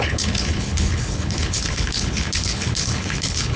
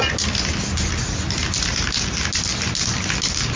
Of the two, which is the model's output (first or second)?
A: first